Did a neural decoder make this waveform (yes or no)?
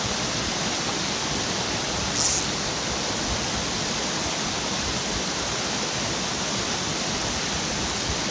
no